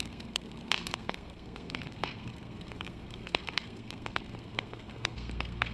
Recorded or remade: remade